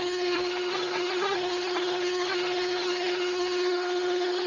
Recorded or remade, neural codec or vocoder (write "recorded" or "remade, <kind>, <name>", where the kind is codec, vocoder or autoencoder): remade, codec, SNAC